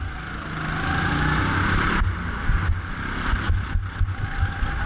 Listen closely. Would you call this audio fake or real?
real